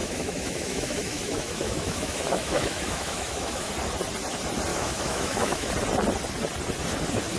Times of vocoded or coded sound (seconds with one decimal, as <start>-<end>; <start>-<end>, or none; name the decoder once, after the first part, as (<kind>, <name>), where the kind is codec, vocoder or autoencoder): 0.0-3.7 (autoencoder, DAC-VAE); 4.7-5.7